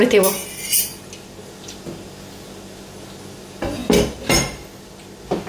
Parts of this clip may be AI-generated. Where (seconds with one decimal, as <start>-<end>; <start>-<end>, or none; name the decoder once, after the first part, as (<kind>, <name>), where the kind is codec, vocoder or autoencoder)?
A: none